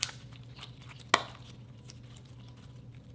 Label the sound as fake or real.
real